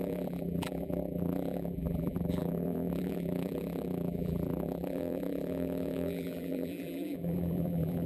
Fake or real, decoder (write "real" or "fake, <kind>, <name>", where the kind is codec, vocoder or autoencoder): fake, vocoder, BigVGAN v2